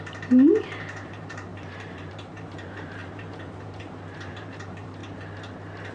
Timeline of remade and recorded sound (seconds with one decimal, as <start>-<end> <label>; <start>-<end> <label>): 0.0-5.0 remade; 5.0-5.9 recorded